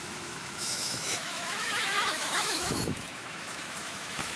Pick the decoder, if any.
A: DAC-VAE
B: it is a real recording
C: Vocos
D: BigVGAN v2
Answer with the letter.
A